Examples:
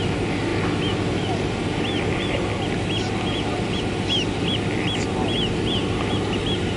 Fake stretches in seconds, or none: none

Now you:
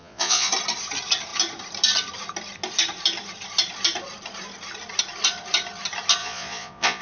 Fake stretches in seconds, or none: 0.0-0.5 (vocoder, Vocos); 6.2-7.0